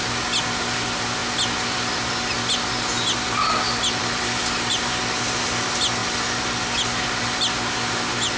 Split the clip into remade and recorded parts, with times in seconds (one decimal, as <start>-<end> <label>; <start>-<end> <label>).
0.0-8.4 recorded